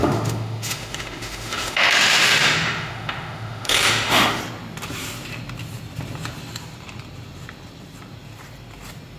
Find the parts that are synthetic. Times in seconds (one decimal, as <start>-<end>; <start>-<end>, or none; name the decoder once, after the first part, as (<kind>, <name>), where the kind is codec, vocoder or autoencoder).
0.0-4.4 (autoencoder, DAC-VAE)